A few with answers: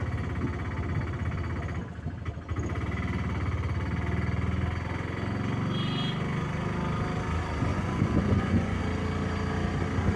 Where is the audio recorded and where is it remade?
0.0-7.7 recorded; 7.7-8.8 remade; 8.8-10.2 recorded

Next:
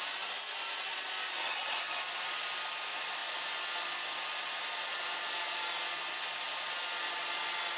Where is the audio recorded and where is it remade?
0.0-1.4 recorded; 1.4-2.0 remade; 2.0-7.8 recorded

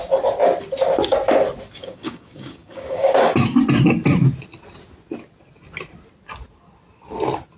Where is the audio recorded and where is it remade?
0.0-1.8 recorded; 1.8-3.6 remade; 3.6-7.6 recorded

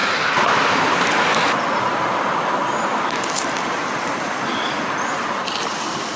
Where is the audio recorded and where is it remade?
0.0-6.2 recorded

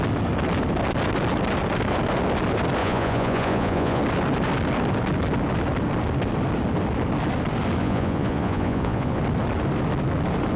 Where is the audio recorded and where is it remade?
0.0-2.8 recorded; 2.8-4.0 remade; 4.0-7.8 recorded; 7.8-9.2 remade; 9.2-10.6 recorded

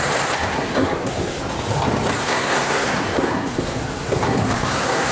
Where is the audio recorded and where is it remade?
0.0-0.4 recorded; 0.4-1.4 remade; 1.4-2.2 recorded; 2.2-5.1 remade